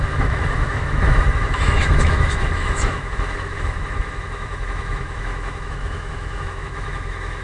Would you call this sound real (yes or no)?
no